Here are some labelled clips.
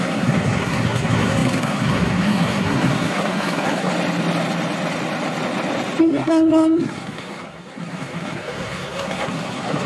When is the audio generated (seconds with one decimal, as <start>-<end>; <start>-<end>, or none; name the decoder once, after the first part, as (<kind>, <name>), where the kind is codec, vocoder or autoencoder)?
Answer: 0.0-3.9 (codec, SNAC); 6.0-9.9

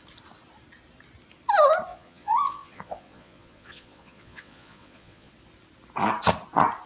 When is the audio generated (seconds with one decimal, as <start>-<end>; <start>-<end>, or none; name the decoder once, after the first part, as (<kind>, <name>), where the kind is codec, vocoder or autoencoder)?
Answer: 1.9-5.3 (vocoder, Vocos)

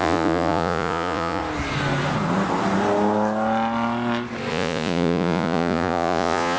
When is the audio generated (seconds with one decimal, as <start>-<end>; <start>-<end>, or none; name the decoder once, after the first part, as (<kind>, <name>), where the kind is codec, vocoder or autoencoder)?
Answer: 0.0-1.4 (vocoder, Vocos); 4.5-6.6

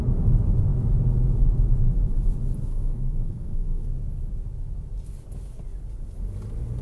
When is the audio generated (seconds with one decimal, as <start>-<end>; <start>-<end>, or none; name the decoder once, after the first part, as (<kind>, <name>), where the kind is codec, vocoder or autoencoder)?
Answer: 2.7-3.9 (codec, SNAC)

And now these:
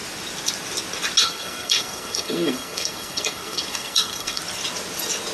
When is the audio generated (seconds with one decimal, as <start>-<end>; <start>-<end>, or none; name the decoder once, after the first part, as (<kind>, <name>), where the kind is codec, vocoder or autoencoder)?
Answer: 1.2-4.4 (codec, SNAC)

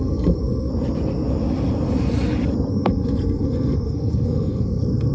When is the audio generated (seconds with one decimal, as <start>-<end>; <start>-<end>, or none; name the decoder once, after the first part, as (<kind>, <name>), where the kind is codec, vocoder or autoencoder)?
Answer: 0.0-0.7 (codec, SNAC); 2.7-5.1

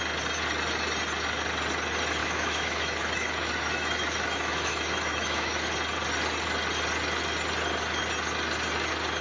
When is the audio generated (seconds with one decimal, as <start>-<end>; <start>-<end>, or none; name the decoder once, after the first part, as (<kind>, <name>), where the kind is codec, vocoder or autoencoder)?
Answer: 2.2-5.7 (autoencoder, DAC-VAE)